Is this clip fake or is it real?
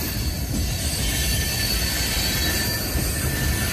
real